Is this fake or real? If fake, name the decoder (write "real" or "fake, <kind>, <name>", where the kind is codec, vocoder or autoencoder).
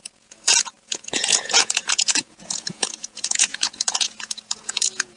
fake, vocoder, Vocos